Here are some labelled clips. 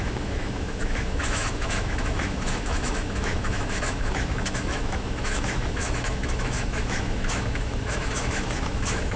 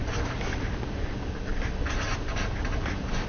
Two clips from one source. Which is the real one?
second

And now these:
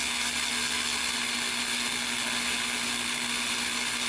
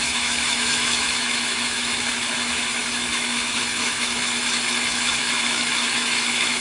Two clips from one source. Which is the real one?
first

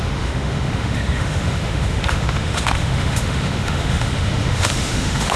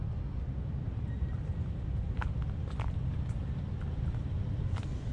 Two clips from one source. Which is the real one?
second